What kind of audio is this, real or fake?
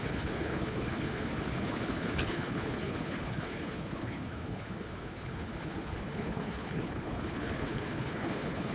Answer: fake